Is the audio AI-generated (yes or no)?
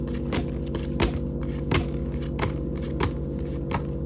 no